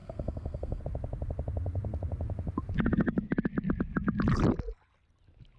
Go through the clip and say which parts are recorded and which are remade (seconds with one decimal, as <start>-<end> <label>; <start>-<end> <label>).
0.0-0.8 remade; 0.8-5.6 recorded